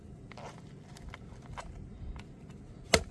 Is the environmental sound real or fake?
real